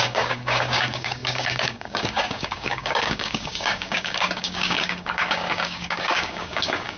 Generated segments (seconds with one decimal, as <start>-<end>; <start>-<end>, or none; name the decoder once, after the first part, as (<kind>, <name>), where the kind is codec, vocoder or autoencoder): 0.0-7.0 (codec, DAC)